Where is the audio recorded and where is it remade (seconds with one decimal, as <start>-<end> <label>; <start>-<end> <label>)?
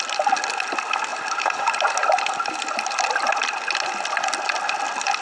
0.0-1.1 recorded; 1.1-1.7 remade; 1.7-5.2 recorded